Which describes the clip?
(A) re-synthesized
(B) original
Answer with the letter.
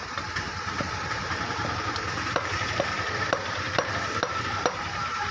A